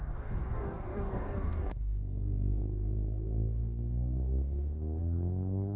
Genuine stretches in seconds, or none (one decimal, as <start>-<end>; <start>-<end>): none